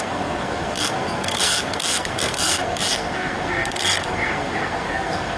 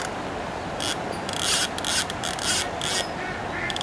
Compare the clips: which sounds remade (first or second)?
first